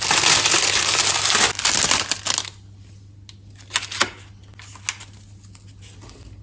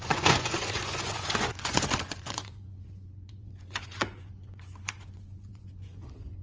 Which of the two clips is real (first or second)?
first